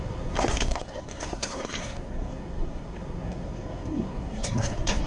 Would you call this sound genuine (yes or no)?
no